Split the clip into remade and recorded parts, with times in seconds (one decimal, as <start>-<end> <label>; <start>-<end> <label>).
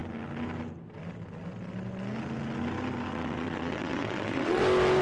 0.0-3.1 recorded; 3.1-4.6 remade; 4.6-5.0 recorded